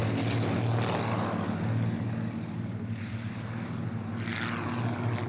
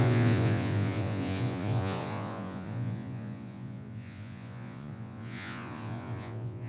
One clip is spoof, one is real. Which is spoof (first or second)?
second